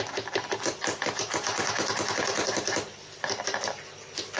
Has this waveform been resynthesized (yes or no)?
no